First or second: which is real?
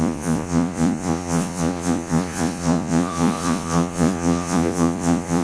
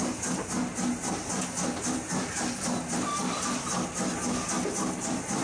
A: second